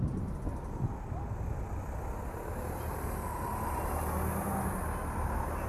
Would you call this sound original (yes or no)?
yes